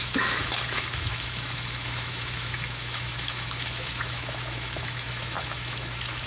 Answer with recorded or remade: remade